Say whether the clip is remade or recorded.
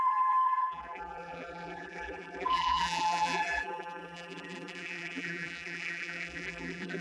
remade